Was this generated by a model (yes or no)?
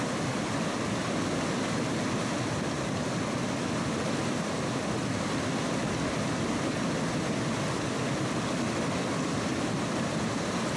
no